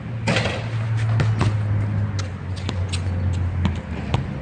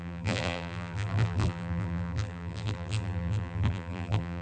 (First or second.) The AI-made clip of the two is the second